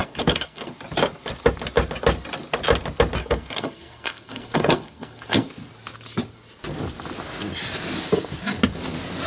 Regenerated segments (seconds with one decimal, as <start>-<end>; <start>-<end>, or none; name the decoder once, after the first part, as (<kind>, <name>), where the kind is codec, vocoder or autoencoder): 0.0-0.7 (codec, SNAC); 3.2-5.5